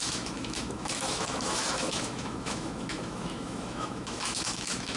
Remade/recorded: remade